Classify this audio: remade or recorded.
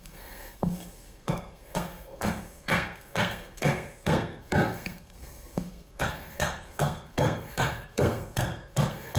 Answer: remade